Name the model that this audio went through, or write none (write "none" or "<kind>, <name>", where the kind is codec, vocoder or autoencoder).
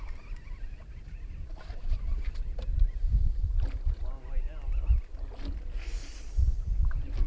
none